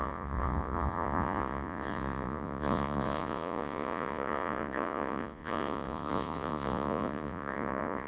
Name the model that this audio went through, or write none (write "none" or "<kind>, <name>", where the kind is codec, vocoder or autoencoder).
vocoder, Vocos